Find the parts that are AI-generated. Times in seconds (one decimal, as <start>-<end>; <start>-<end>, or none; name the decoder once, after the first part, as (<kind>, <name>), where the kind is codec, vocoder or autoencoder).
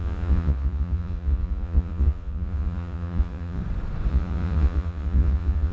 0.0-3.6 (vocoder, Vocos); 4.1-5.7